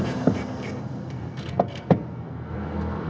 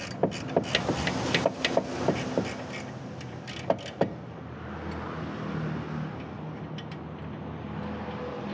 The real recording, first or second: second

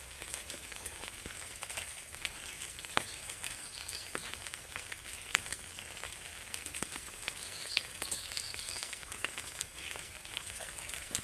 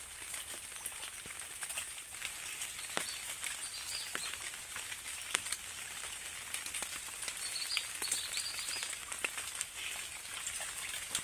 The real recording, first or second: second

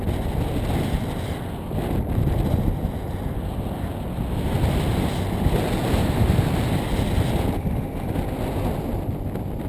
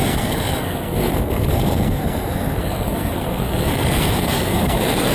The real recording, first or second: first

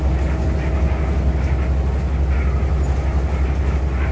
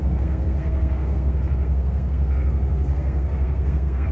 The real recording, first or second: first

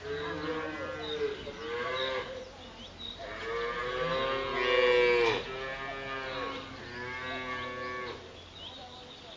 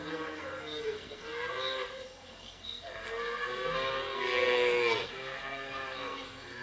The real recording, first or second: first